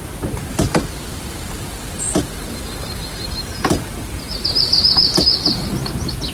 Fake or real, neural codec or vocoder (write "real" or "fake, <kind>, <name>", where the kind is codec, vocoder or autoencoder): real